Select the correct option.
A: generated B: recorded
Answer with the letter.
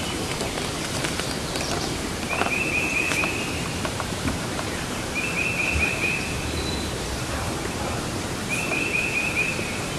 A